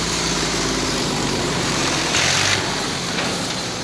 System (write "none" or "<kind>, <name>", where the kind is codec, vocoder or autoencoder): vocoder, BigVGAN v2